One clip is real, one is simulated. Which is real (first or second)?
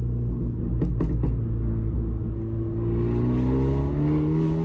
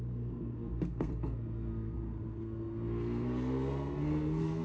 first